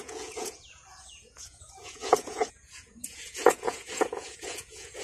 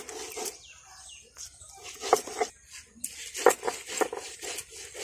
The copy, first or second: first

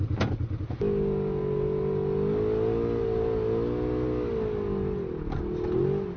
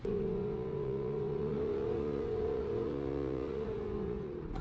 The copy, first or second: second